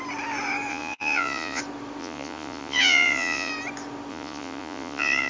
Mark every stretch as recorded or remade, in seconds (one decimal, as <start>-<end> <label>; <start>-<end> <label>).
0.0-0.7 recorded; 0.7-1.6 remade; 1.6-2.0 recorded; 2.0-3.5 remade; 3.5-4.1 recorded; 4.1-5.3 remade